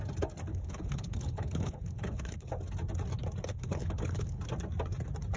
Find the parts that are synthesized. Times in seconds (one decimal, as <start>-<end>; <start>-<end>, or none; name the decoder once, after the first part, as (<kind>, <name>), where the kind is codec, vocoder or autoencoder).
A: 0.5-2.5 (codec, HILCodec); 3.5-4.4